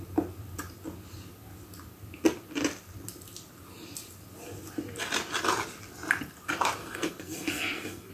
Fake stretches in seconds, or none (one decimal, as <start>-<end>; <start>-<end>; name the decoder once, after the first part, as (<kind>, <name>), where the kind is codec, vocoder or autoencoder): 6.8-8.1 (codec, SNAC)